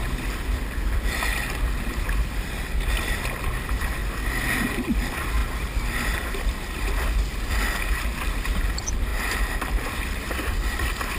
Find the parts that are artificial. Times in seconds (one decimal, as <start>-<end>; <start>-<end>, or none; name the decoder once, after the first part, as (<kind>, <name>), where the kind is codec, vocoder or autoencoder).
1.9-4.0 (vocoder, BigVGAN v2); 4.7-11.2